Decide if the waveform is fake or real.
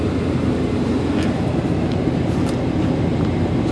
real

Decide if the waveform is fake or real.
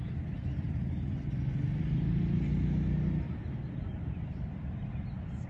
real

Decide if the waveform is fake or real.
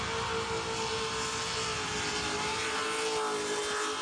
real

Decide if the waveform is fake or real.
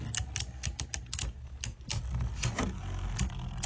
real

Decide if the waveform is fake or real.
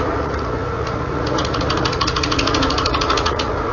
fake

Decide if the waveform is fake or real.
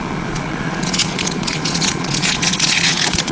fake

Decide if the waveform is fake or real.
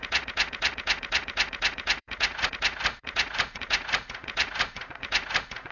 fake